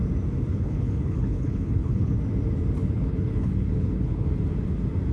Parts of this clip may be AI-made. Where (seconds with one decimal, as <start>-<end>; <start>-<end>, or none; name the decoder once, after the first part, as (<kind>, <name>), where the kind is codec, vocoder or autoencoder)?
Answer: 0.5-2.2 (codec, HILCodec); 2.8-4.3